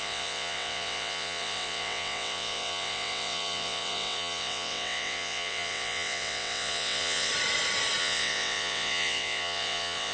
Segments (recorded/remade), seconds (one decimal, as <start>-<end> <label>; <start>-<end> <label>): 0.0-7.3 remade; 7.3-8.0 recorded; 8.0-10.1 remade